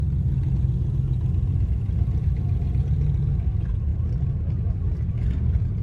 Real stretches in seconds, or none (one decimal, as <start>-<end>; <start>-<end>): 0.0-5.8